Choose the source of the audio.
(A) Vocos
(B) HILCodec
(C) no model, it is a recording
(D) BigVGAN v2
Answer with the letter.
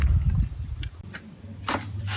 D